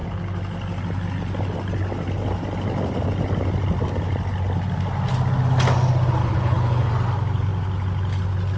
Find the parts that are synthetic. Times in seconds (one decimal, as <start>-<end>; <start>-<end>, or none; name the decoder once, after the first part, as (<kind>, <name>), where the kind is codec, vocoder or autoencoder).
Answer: 6.2-6.9 (codec, HILCodec)